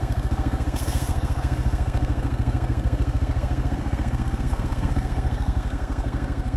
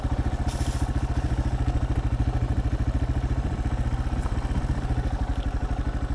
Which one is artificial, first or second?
first